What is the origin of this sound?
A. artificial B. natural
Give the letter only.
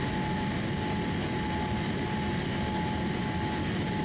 B